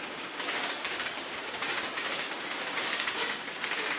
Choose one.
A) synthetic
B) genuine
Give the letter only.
A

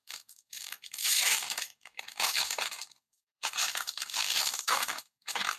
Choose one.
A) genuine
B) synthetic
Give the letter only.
B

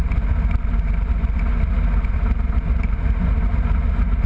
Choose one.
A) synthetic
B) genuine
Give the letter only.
B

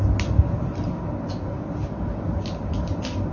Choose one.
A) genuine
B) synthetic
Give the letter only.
A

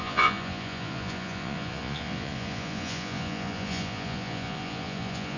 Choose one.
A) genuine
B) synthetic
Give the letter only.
B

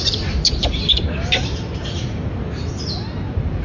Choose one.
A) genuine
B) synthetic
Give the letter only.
A